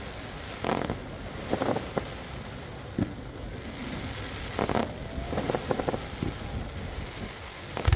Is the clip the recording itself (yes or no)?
yes